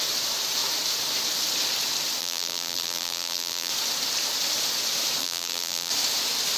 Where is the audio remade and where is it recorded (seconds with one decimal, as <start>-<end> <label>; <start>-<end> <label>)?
0.0-2.2 recorded; 2.2-3.7 remade; 3.7-5.2 recorded; 5.2-5.9 remade; 5.9-6.6 recorded